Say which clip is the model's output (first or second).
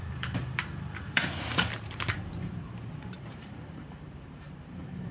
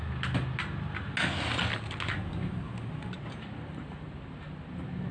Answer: first